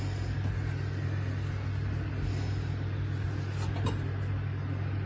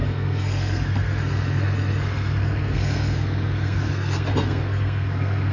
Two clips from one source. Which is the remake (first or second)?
second